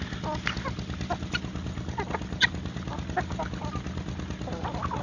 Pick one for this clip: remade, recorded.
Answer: recorded